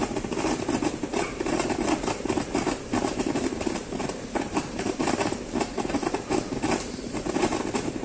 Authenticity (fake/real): fake